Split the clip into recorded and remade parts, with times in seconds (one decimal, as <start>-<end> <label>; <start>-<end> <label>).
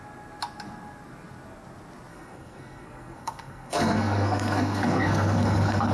0.0-2.1 recorded; 2.1-5.9 remade